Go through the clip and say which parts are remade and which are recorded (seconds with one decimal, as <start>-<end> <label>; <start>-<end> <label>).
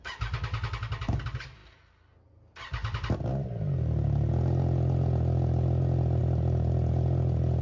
0.0-7.6 recorded